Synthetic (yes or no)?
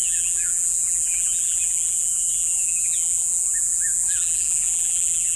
yes